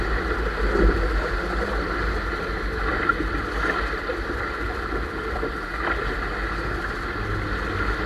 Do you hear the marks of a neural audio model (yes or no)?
no